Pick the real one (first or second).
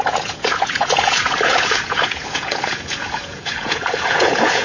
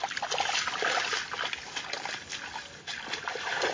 second